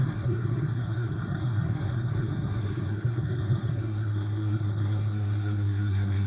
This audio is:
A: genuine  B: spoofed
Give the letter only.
B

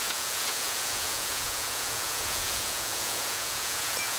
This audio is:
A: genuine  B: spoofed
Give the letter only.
B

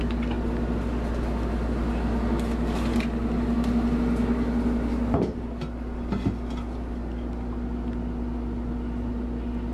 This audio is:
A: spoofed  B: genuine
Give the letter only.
B